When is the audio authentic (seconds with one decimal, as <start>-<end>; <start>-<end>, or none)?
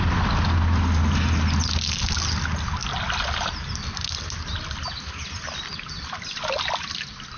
0.0-2.8; 6.2-7.4